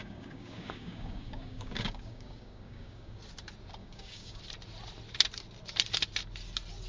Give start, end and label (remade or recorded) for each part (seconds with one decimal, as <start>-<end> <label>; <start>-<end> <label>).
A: 0.0-3.2 remade; 3.2-3.8 recorded; 3.8-4.4 remade; 4.4-6.9 recorded